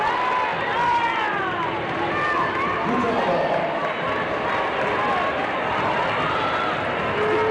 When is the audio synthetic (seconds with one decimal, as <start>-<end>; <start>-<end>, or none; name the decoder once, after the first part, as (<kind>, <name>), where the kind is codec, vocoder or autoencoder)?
0.5-2.1 (vocoder, BigVGAN v2)